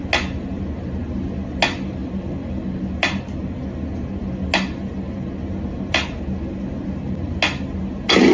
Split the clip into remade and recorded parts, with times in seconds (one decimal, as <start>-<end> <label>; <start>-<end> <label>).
0.0-8.3 recorded